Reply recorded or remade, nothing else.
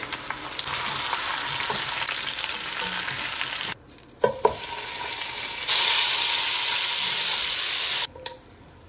recorded